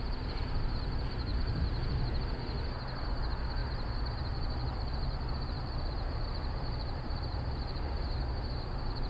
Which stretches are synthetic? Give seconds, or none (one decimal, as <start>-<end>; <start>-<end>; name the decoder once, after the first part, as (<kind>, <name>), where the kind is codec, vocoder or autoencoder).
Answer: 1.3-2.0 (vocoder, BigVGAN v2); 3.6-8.0